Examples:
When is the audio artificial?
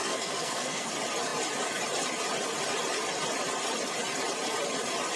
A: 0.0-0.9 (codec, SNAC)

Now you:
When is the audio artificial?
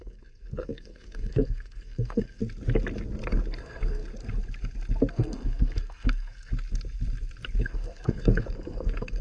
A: 0.0-2.4 (codec, SNAC); 3.6-4.0; 5.1-6.5; 7.6-9.2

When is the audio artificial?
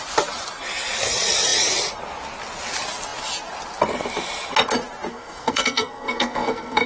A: 5.1-6.9 (codec, SNAC)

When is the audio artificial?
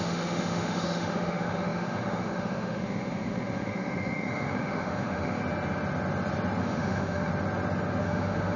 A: 0.0-5.4 (autoencoder, DAC-VAE); 6.6-7.3; 8.0-8.6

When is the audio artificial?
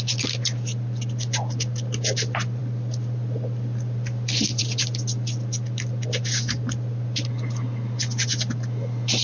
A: 2.6-4.6 (vocoder, BigVGAN v2)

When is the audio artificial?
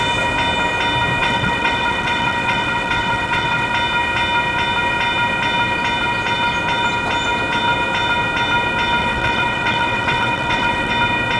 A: 1.2-3.7 (vocoder, WaveNeXt); 9.0-10.9